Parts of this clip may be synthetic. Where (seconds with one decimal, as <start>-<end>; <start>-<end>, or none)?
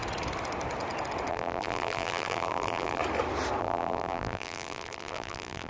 1.3-3.0; 3.6-5.7